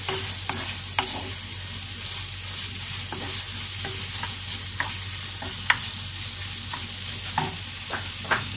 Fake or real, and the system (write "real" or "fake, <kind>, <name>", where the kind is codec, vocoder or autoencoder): real